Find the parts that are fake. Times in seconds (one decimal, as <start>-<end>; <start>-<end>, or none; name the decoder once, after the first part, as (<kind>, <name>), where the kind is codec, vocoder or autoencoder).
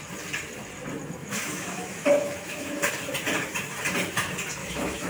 1.2-2.9 (autoencoder, DAC-VAE); 4.6-5.1